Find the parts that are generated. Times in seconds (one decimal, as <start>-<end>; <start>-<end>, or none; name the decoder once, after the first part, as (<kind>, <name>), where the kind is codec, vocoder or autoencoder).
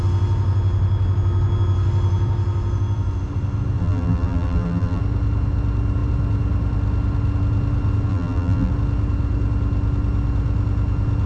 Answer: 3.8-5.0 (vocoder, BigVGAN v2); 8.1-8.7